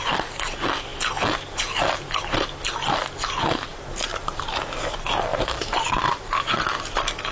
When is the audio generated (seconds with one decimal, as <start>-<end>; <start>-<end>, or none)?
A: 3.7-4.5; 5.3-6.0